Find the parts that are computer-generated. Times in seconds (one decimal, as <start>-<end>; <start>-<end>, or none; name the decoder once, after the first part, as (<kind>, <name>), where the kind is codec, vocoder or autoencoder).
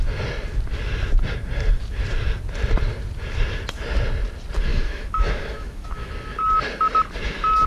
4.7-6.1 (autoencoder, DAC-VAE)